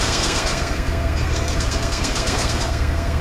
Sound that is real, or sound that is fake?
fake